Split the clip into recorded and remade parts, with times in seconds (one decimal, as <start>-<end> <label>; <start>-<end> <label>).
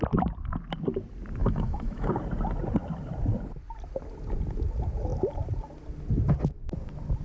0.0-1.4 recorded; 1.4-2.1 remade; 2.1-7.2 recorded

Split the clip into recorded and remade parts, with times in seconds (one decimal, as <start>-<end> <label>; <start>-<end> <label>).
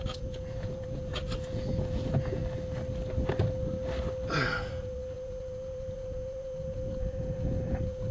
0.0-2.4 remade; 2.4-4.3 recorded; 4.3-8.1 remade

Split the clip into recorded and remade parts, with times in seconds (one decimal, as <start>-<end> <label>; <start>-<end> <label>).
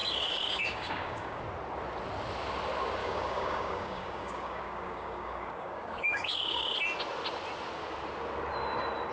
0.0-1.4 remade; 1.4-3.0 recorded; 3.0-6.7 remade; 6.7-9.1 recorded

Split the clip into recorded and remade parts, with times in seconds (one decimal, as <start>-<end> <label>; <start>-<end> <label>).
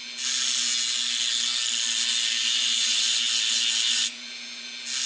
0.0-5.1 recorded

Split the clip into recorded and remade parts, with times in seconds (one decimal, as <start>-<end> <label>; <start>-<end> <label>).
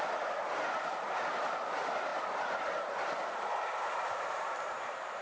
0.0-5.2 recorded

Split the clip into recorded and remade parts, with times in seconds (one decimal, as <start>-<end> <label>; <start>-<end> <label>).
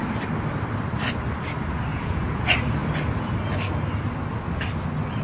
0.0-1.9 recorded; 1.9-2.4 remade; 2.4-5.2 recorded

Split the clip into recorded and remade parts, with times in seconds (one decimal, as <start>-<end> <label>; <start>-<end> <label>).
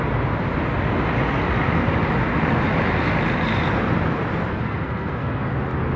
0.0-4.5 recorded; 4.5-5.5 remade; 5.5-6.0 recorded